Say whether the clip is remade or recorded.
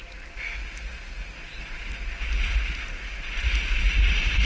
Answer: recorded